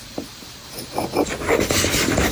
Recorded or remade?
recorded